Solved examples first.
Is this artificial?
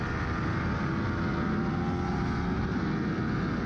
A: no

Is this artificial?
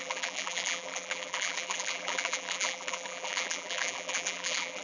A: yes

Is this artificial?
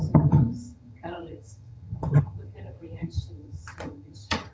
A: yes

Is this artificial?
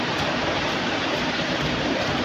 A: no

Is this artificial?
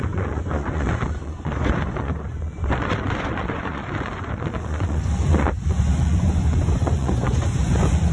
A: yes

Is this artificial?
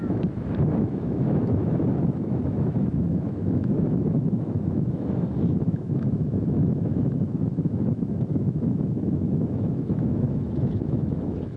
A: yes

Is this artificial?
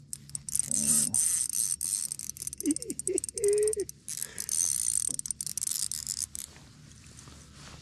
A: no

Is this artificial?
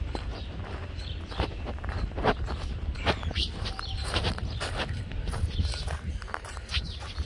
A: yes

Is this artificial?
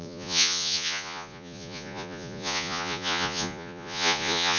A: yes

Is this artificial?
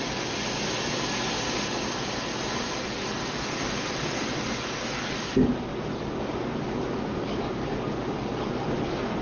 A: no